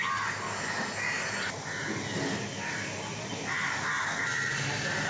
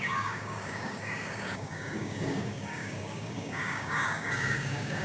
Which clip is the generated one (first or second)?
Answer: second